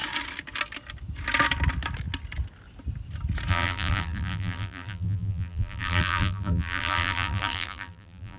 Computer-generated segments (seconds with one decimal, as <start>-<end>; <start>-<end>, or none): 3.5-8.4